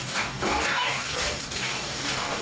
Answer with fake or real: fake